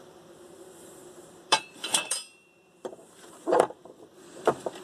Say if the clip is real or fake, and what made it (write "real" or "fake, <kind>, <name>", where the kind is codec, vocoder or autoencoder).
fake, vocoder, BigVGAN v2